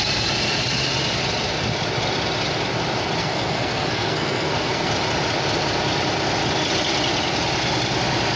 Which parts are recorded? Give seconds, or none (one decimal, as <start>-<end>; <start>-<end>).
0.0-3.2; 4.9-8.4